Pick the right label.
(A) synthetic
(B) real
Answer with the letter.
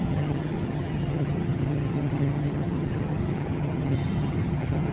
A